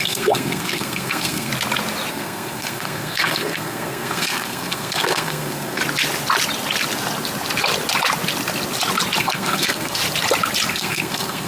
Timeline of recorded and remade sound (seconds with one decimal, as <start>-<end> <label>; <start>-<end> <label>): 0.0-1.5 remade; 1.5-2.1 recorded; 2.1-5.8 remade; 5.8-9.2 recorded; 9.2-10.0 remade; 10.0-10.7 recorded; 10.7-11.5 remade